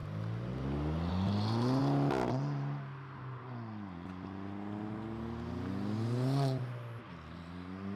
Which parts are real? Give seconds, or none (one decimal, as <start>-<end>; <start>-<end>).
0.0-8.0